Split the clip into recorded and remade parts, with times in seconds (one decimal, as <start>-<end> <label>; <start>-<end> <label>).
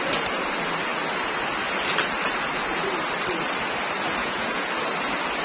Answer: 0.0-4.2 recorded; 4.2-4.7 remade; 4.7-5.4 recorded